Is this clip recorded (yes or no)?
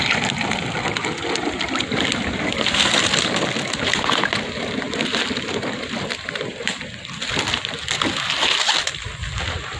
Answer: yes